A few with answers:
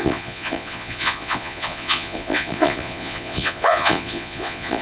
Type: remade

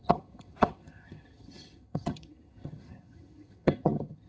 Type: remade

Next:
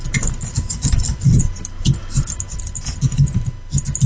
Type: recorded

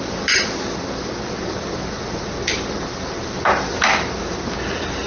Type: recorded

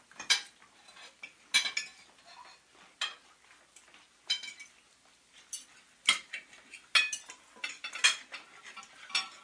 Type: recorded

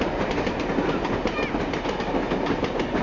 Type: recorded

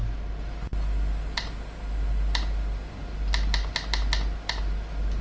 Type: recorded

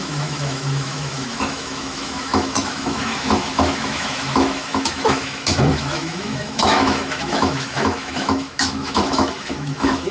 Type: remade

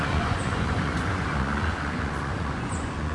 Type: remade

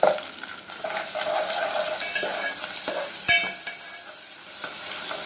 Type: remade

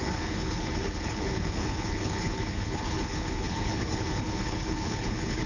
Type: remade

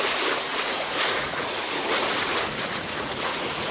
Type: remade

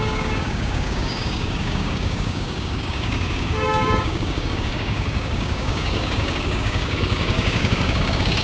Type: remade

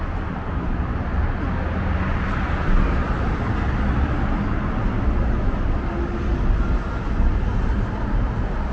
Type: recorded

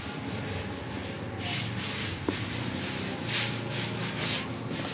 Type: recorded